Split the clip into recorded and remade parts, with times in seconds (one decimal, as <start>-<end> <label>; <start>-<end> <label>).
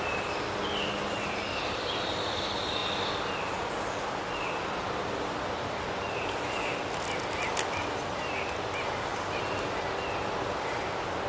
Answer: 0.0-11.3 recorded